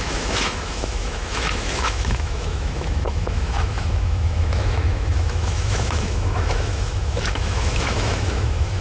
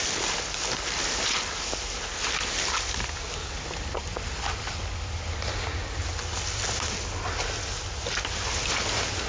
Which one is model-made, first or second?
first